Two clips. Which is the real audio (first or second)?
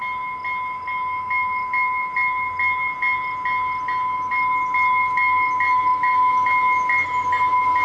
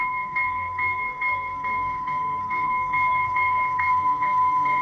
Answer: first